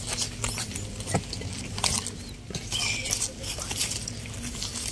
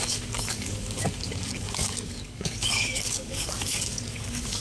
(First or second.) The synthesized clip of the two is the second